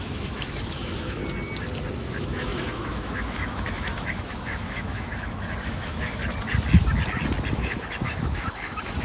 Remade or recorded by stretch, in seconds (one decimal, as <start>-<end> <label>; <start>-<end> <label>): 0.0-1.2 remade; 1.2-1.9 recorded; 1.9-6.2 remade; 6.2-7.5 recorded; 7.5-9.0 remade

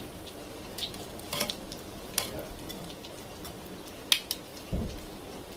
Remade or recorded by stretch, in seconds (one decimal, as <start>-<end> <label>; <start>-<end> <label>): 0.0-5.6 recorded

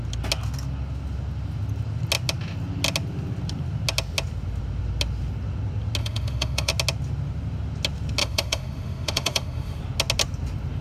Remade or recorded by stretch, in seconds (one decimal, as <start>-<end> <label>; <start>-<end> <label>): 0.0-6.0 recorded; 6.0-6.7 remade; 6.7-8.2 recorded; 8.2-9.8 remade; 9.8-10.8 recorded

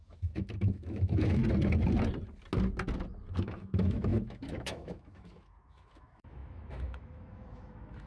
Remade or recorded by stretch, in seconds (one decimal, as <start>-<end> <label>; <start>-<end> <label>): 0.0-1.4 remade; 1.4-3.4 recorded; 3.4-8.1 remade

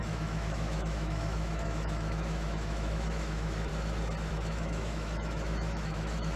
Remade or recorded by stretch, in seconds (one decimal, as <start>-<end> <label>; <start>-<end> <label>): 0.0-3.7 remade; 3.7-4.3 recorded; 4.3-6.4 remade

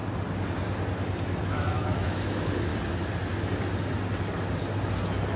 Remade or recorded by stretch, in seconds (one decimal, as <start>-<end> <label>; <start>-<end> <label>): 0.0-1.4 recorded; 1.4-2.7 remade; 2.7-5.4 recorded